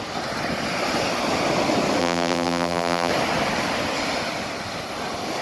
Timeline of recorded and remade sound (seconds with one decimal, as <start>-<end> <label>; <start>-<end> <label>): 0.0-2.0 recorded; 2.0-3.1 remade; 3.1-5.4 recorded